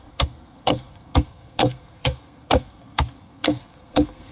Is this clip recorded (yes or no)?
no